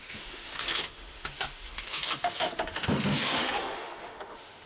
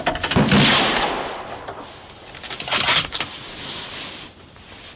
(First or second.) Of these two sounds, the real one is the second